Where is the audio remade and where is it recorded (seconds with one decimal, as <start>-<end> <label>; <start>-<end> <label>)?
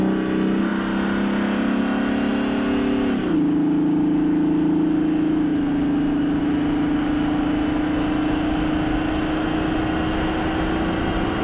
0.0-11.4 recorded